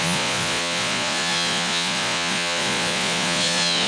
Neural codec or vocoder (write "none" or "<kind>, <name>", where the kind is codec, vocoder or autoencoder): vocoder, Vocos